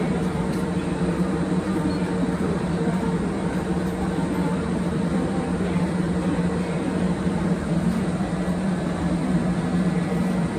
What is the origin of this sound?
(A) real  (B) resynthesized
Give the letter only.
B